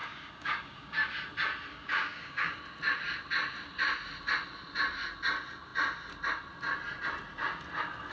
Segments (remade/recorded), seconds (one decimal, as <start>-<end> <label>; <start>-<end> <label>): 0.0-1.1 remade; 1.1-1.7 recorded; 1.7-2.6 remade; 2.6-8.1 recorded